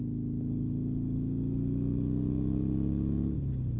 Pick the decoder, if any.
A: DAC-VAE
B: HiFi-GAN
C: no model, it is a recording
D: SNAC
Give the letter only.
C